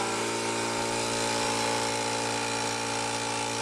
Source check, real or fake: real